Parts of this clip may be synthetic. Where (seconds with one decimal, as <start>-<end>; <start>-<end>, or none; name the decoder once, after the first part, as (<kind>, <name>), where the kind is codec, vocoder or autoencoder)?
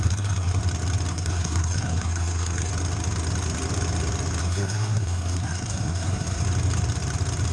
0.0-0.6 (codec, SNAC); 1.1-2.7; 4.4-6.4